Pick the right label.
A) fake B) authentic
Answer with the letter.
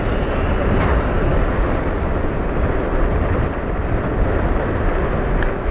B